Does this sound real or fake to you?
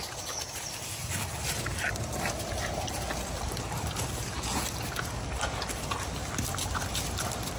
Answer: real